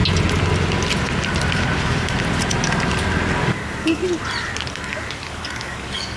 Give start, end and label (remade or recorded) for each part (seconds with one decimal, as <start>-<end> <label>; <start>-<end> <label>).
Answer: 0.0-3.4 recorded; 3.4-4.0 remade; 4.0-4.7 recorded; 4.7-6.2 remade

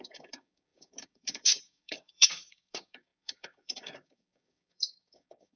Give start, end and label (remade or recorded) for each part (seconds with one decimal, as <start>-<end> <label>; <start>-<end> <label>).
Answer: 0.0-5.6 remade

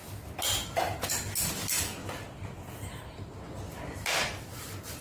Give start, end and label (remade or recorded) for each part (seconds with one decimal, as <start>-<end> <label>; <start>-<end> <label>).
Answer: 0.0-5.0 recorded

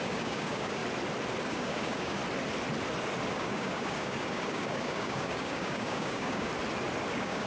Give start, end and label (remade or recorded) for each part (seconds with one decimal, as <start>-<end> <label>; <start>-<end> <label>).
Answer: 0.0-0.8 remade; 0.8-1.4 recorded; 1.4-2.2 remade; 2.2-3.3 recorded; 3.3-6.5 remade; 6.5-7.1 recorded; 7.1-7.5 remade